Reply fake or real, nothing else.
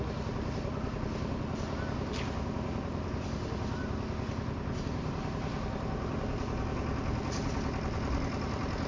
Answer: real